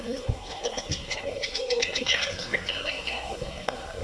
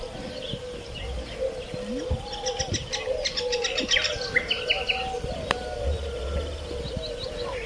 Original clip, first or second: second